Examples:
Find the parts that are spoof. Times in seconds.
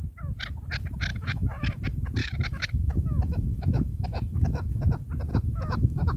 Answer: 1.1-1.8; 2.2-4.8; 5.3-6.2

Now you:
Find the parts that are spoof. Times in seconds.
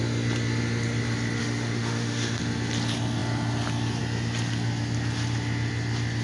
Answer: 1.4-2.4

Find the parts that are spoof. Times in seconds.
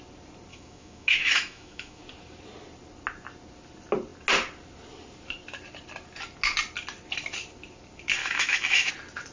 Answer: 0.5-2.0; 8.2-8.9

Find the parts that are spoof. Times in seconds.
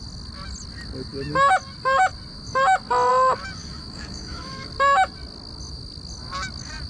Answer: 3.6-4.7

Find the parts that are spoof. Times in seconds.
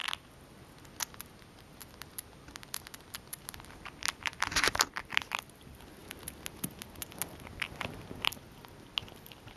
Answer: none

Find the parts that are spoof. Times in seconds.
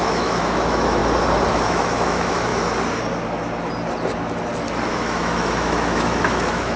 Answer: 0.0-1.0; 1.5-2.5; 4.9-6.8